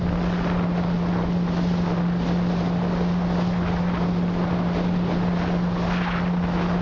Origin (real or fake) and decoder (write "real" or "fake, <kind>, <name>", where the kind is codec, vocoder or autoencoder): real